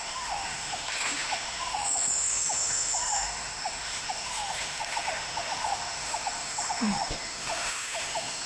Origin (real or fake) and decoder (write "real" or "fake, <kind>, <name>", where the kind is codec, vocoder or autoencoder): fake, autoencoder, DAC-VAE